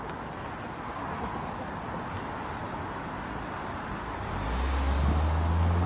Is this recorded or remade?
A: recorded